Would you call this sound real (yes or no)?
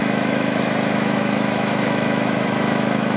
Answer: no